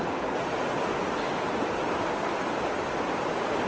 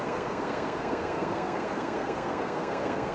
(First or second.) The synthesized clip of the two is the second